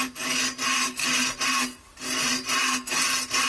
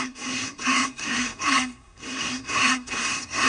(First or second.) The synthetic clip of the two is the second